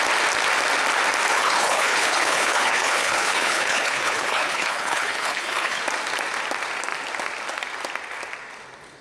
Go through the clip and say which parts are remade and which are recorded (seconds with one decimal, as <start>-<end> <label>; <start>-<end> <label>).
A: 0.0-1.3 recorded; 1.3-5.8 remade; 5.8-9.0 recorded